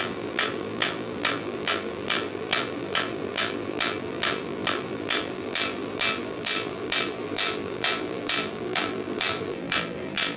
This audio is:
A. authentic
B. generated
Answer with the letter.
B